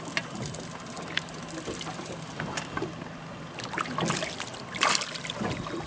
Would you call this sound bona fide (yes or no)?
yes